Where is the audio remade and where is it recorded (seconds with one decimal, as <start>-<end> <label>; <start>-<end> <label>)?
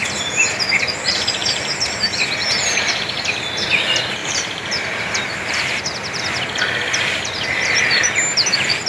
0.0-1.4 recorded; 1.4-3.0 remade; 3.0-4.2 recorded; 4.2-5.8 remade; 5.8-8.9 recorded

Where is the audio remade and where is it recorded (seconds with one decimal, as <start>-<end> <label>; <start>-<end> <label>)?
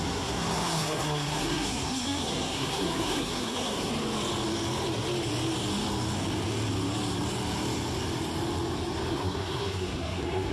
0.0-3.9 remade; 3.9-9.1 recorded; 9.1-10.5 remade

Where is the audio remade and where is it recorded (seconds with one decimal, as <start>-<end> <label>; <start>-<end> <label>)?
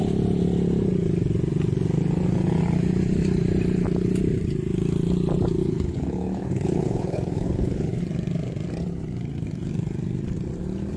0.0-5.6 recorded; 5.6-8.0 remade; 8.0-11.0 recorded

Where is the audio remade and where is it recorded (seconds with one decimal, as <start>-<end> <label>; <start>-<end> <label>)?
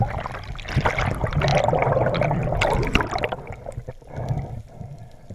0.0-5.3 recorded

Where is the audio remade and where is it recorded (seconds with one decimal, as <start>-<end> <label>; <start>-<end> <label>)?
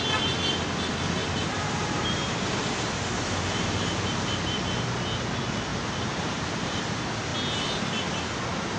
0.0-1.2 recorded; 1.2-3.7 remade; 3.7-5.7 recorded; 5.7-6.8 remade; 6.8-8.8 recorded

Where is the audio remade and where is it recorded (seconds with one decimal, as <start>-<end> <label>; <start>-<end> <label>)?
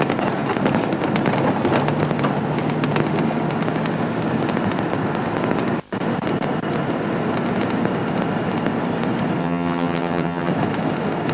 0.0-9.4 recorded; 9.4-10.5 remade; 10.5-11.3 recorded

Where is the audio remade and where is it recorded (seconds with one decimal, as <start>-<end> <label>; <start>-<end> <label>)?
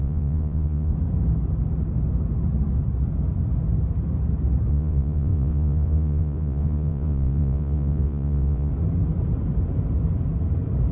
0.0-0.9 remade; 0.9-4.7 recorded; 4.7-8.7 remade; 8.7-10.9 recorded